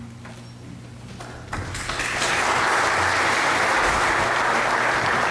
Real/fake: real